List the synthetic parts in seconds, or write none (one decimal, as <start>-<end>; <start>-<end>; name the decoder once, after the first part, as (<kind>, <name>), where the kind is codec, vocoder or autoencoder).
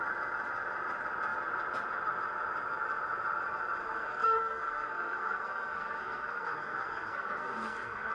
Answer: 3.8-8.1 (codec, SNAC)